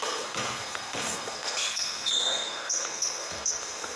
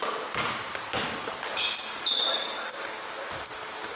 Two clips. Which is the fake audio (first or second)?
first